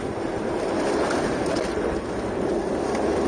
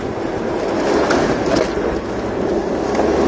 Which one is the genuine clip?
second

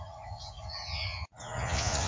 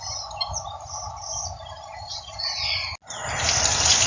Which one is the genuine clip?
second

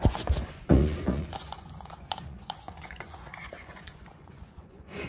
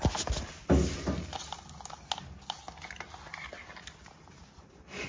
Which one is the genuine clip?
second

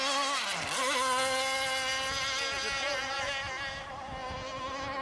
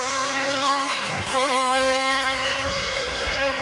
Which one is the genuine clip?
first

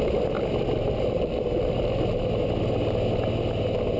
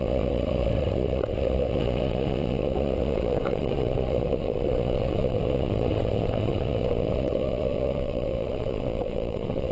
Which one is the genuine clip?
first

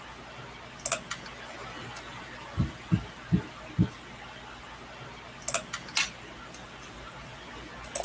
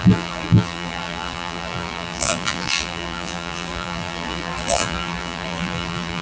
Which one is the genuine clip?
first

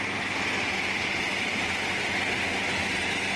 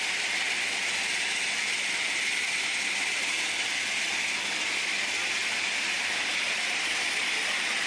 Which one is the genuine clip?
first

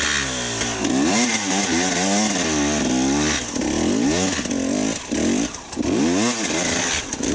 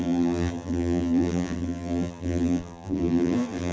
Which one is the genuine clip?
first